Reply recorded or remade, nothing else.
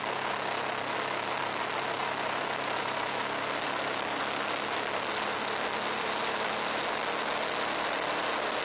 recorded